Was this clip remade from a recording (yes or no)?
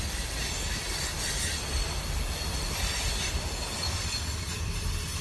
no